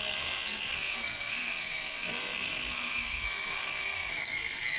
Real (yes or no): no